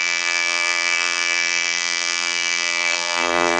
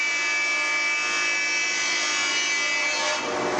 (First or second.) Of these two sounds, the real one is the second